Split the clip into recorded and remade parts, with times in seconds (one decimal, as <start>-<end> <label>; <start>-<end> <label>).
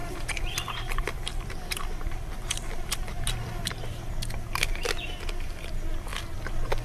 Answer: 0.0-4.1 remade; 4.1-6.8 recorded